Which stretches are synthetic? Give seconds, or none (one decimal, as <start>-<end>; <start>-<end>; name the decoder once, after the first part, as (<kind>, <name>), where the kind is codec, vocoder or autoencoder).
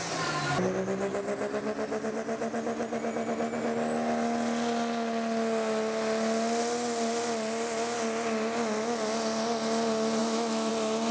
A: 10.2-10.7 (autoencoder, DAC-VAE)